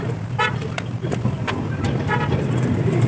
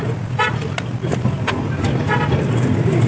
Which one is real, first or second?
second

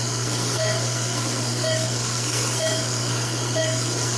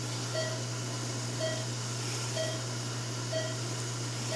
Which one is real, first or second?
second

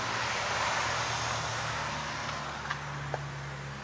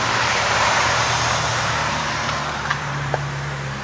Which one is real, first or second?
first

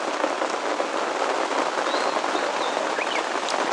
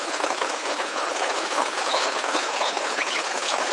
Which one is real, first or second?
first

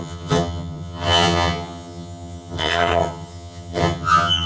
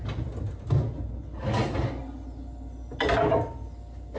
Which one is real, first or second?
second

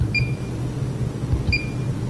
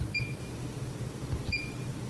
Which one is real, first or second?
first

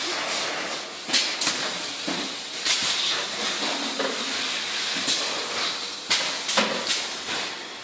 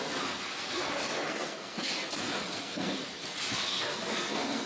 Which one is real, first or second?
first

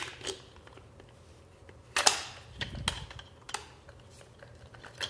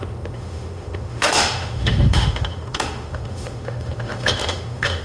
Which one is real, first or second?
first